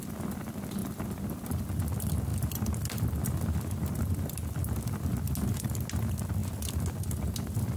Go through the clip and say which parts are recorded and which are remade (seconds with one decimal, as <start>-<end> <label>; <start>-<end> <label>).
0.0-7.8 recorded

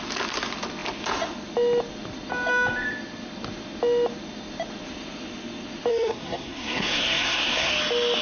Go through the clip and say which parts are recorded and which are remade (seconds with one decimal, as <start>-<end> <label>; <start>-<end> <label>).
0.0-5.9 recorded; 5.9-7.7 remade; 7.7-8.2 recorded

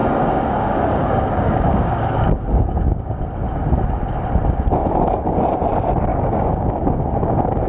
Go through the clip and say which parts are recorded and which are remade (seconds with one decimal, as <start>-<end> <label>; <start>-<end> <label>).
0.0-3.2 remade; 3.2-4.8 recorded; 4.8-5.4 remade; 5.4-6.1 recorded; 6.1-7.7 remade

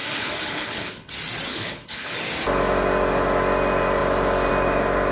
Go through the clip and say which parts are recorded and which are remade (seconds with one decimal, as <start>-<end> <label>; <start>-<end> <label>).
0.0-1.1 remade; 1.1-1.5 recorded; 1.5-2.2 remade; 2.2-5.1 recorded